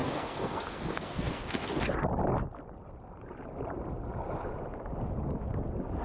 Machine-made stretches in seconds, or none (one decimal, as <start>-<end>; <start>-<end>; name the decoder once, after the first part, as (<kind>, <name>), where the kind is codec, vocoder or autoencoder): 0.0-1.8 (codec, SNAC)